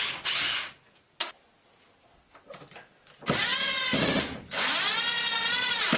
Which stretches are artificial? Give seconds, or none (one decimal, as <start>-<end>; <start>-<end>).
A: none